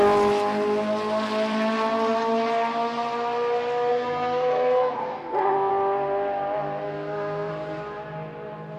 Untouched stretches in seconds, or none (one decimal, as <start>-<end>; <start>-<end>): 0.0-3.9; 5.7-6.8; 7.5-8.8